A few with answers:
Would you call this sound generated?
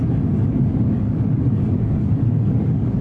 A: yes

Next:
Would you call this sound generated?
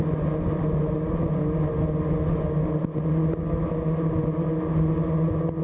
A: no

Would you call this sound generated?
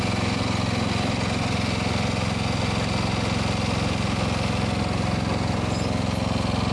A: no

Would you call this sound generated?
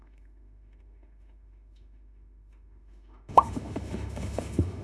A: yes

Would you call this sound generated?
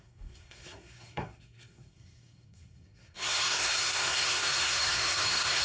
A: yes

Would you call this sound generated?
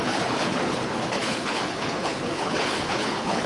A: yes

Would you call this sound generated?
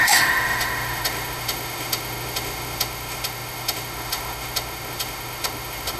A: yes